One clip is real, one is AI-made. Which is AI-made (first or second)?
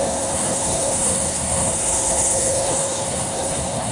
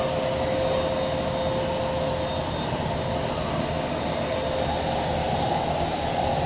first